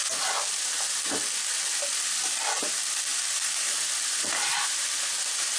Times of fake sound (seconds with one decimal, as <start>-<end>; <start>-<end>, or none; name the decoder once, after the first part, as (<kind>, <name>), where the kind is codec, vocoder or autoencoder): 3.1-4.3 (vocoder, BigVGAN v2)